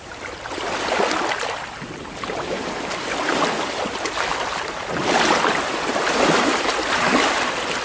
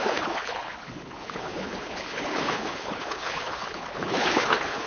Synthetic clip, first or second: second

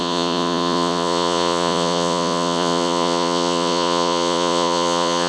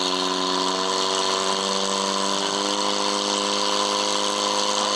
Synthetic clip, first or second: first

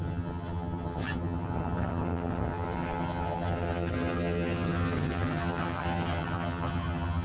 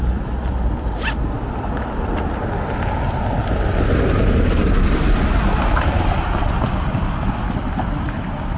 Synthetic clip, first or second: first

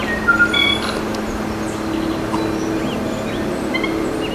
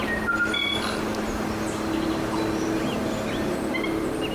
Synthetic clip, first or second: second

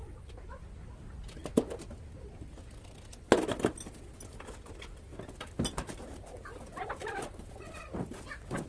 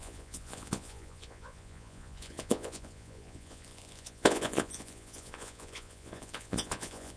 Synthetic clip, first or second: second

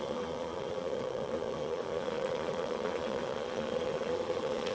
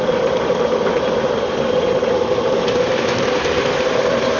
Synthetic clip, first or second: first